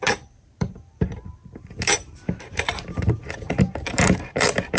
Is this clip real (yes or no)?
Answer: no